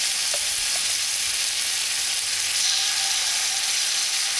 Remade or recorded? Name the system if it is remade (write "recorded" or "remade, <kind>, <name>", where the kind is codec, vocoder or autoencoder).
recorded